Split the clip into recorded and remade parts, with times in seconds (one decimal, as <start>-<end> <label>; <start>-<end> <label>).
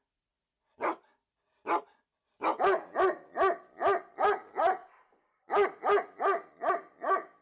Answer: 0.0-7.4 recorded